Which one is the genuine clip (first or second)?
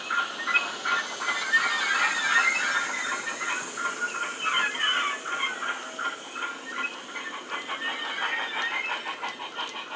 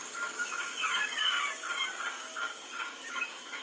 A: first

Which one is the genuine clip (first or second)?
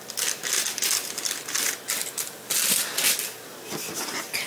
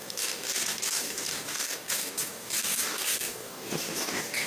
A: first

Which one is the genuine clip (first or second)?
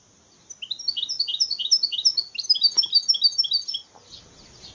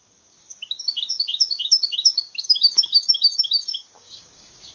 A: first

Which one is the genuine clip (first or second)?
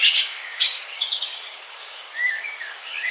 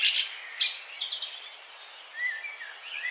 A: second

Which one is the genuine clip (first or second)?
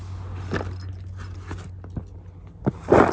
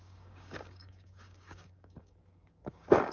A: first